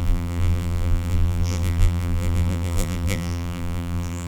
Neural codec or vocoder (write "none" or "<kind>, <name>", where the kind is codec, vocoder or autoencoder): vocoder, BigVGAN v2